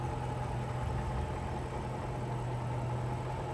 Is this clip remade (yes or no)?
no